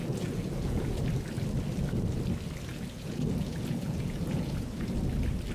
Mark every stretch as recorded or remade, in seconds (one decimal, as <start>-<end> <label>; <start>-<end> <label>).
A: 0.0-1.0 remade; 1.0-2.7 recorded; 2.7-5.0 remade; 5.0-5.5 recorded